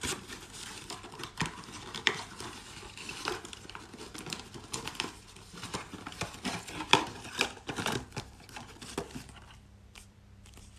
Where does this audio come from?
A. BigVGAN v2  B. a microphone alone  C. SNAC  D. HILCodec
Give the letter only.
A